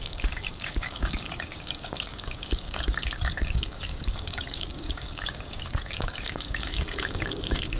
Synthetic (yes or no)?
yes